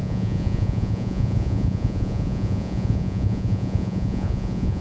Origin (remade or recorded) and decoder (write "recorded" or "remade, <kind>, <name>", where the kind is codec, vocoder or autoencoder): remade, vocoder, Vocos